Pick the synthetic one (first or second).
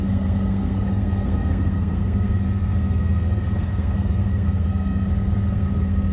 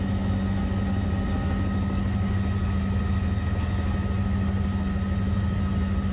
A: first